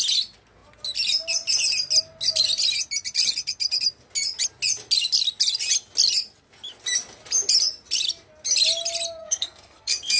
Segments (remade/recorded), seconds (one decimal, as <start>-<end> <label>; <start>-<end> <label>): 0.0-9.2 recorded; 9.2-10.2 remade